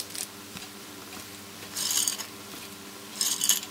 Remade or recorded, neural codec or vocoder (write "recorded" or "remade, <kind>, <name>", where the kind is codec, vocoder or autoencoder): remade, vocoder, BigVGAN v2